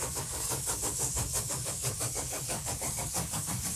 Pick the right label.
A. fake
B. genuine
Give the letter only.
A